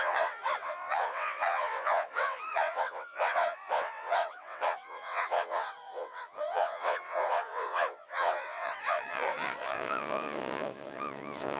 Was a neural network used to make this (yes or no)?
yes